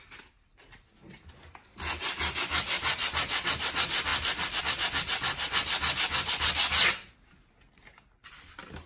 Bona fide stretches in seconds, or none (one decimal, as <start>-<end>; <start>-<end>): 0.0-8.9

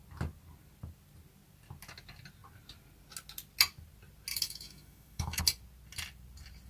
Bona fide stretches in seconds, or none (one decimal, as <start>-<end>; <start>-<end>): 0.0-4.3; 5.4-6.7

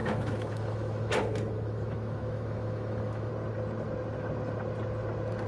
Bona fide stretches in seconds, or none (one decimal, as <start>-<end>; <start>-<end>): 3.3-5.5

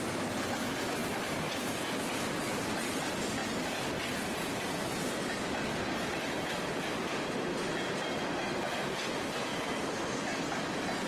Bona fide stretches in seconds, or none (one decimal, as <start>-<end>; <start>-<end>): 0.0-9.5; 10.2-11.1

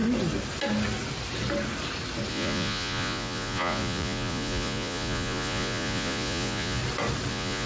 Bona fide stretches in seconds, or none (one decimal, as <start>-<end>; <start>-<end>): 0.0-2.3; 6.8-7.3

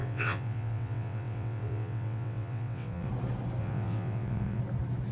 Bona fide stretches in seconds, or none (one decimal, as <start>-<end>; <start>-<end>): 3.1-3.6; 4.6-5.1